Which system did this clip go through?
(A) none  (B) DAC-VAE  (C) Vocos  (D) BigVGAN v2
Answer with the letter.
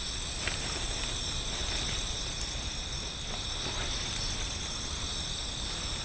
A